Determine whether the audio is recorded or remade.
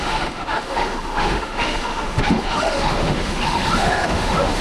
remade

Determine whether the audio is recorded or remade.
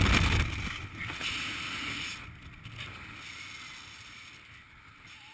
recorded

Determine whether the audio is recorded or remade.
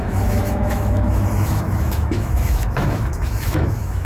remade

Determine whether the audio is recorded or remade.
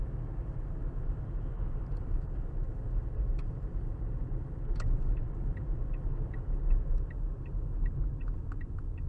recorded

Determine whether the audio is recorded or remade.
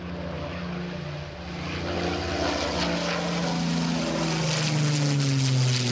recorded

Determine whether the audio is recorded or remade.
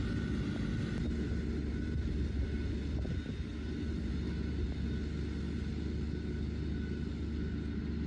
recorded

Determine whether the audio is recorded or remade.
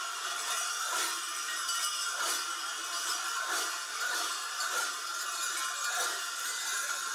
recorded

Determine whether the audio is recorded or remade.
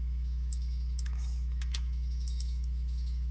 remade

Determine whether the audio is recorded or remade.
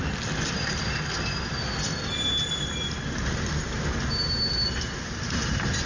recorded